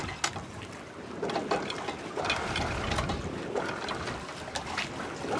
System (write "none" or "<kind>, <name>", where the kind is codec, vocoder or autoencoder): none